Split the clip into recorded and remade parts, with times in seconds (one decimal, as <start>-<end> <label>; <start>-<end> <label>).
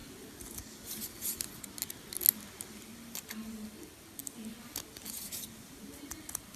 0.0-6.6 recorded